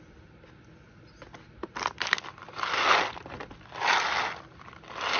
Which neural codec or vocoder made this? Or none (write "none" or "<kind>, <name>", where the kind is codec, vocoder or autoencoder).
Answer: none